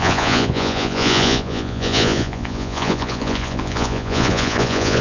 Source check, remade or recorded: remade